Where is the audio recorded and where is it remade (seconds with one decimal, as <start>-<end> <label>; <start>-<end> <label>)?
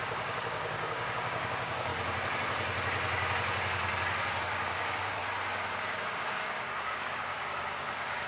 0.0-1.9 remade; 1.9-4.4 recorded; 4.4-5.2 remade; 5.2-6.0 recorded; 6.0-8.3 remade